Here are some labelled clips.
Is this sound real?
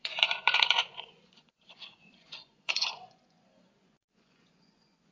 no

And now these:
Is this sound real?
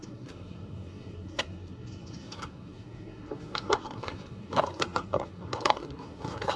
no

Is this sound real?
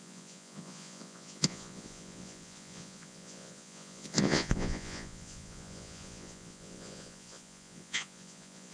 no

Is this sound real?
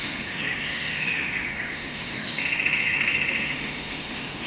no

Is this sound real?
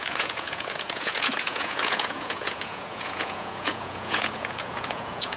no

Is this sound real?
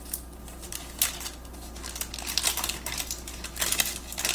yes